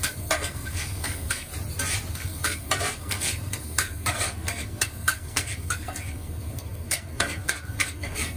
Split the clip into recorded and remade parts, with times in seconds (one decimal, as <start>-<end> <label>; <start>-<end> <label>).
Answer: 0.0-1.5 remade; 1.5-2.1 recorded; 2.1-8.4 remade